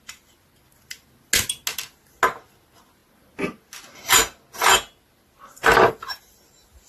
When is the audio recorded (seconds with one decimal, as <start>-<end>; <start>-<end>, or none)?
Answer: 0.0-6.9

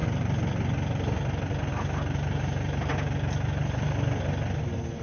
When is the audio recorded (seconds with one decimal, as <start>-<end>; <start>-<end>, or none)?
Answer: 0.0-5.0

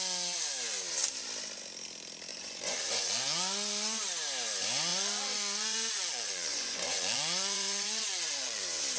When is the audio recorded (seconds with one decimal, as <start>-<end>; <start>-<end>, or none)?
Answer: 0.0-2.3; 3.1-4.9; 8.6-9.0

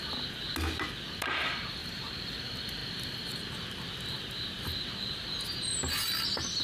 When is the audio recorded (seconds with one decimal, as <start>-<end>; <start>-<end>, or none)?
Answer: 0.0-1.8; 2.4-6.6

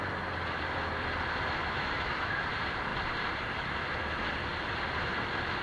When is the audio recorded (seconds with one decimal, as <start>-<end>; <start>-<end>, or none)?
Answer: 0.0-1.6; 2.4-5.6

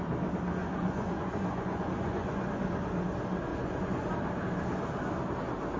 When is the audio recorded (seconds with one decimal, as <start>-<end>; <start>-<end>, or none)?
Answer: 0.0-0.6; 2.5-3.5; 4.1-5.8